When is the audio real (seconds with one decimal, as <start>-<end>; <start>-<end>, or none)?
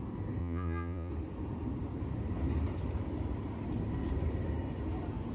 0.0-0.4; 1.1-5.3